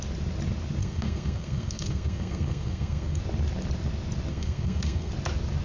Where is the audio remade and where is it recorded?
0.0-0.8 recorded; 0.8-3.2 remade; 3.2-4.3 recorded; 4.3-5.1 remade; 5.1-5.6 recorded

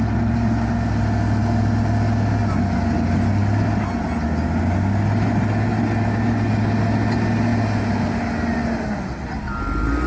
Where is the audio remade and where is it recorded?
0.0-10.1 recorded

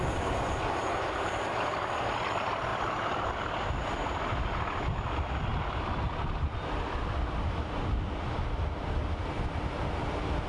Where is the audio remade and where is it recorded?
0.0-10.5 recorded

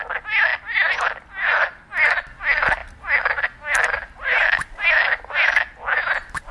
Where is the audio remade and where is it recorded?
0.0-6.5 recorded

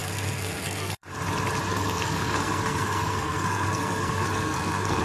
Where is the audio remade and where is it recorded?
0.0-1.1 remade; 1.1-1.7 recorded; 1.7-5.0 remade

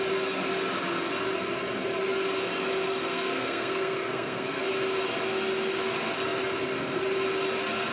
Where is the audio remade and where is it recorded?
0.0-3.1 recorded; 3.1-4.6 remade; 4.6-7.9 recorded

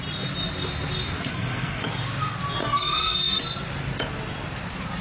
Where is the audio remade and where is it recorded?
0.0-1.3 recorded; 1.3-1.9 remade; 1.9-2.6 recorded; 2.6-3.4 remade; 3.4-5.0 recorded

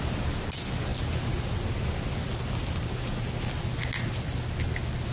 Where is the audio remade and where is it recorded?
0.0-5.1 recorded